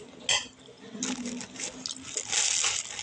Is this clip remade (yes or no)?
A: no